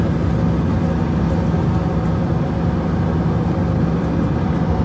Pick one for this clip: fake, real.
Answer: real